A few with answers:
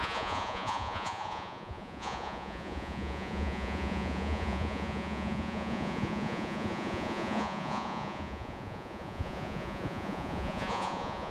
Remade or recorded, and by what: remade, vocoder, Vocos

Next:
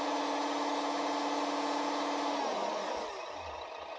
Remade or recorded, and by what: recorded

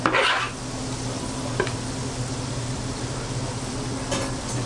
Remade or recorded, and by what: recorded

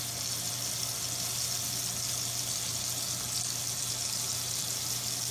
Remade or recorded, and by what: recorded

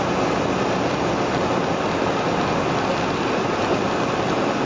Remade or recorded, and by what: recorded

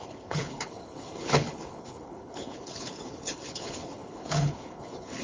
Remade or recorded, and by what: remade, codec, HILCodec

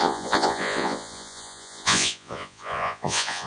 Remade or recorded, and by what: remade, vocoder, Vocos